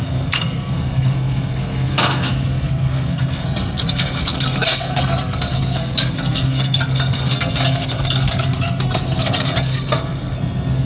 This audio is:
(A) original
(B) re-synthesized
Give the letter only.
B